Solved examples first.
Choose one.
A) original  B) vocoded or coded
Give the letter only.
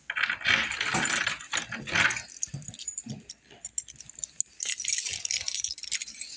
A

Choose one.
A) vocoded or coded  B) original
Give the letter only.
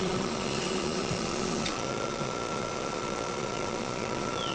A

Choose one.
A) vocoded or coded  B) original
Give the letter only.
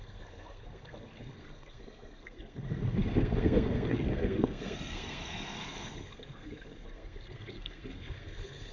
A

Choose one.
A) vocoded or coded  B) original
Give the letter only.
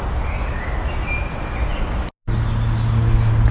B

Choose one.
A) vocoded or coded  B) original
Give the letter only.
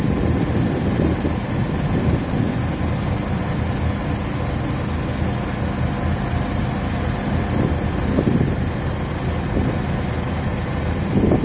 B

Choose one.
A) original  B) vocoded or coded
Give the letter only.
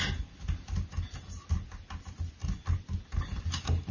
A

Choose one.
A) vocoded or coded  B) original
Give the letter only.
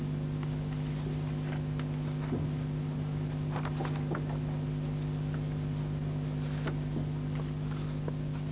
B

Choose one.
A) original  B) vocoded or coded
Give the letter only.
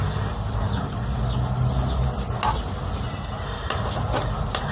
A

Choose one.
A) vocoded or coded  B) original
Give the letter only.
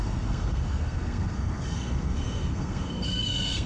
A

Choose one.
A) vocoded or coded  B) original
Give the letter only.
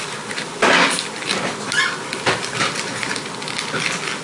B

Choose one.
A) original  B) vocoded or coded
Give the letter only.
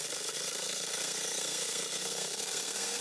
B